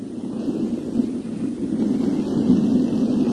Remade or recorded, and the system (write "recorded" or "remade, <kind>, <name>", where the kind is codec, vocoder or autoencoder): recorded